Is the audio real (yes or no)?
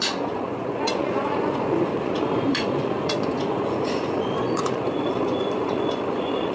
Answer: no